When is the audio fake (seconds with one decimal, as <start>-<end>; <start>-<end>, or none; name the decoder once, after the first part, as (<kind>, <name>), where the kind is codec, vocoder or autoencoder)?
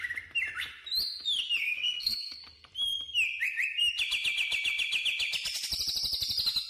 1.6-2.4 (codec, SNAC)